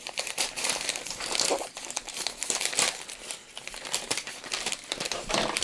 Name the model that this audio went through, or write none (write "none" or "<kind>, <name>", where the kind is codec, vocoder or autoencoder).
vocoder, BigVGAN v2